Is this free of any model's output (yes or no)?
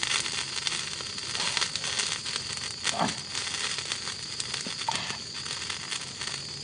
yes